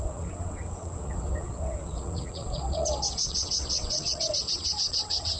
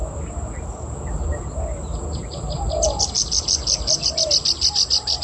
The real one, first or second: second